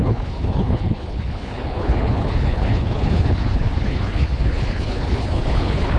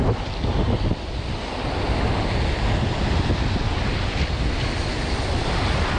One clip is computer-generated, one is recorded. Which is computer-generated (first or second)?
first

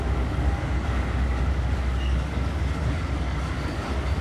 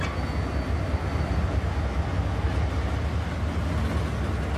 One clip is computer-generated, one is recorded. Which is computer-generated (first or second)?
first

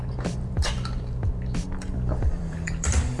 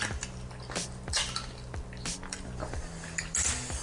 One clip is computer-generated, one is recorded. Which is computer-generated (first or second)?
first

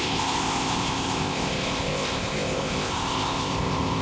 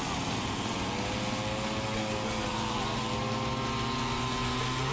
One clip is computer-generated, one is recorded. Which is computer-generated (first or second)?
first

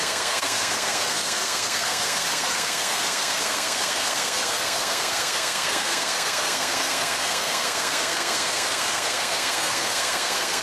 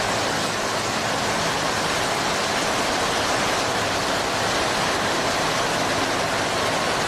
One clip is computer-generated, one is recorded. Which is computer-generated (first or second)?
first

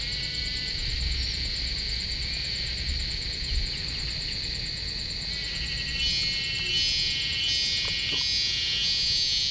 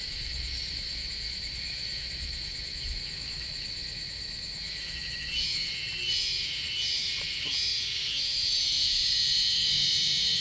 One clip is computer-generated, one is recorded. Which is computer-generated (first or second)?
second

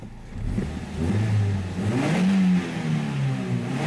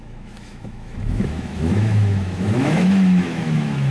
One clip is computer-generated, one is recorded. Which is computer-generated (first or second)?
second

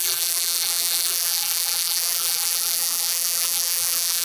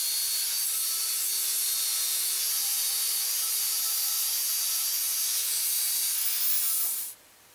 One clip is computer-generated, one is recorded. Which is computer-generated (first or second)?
first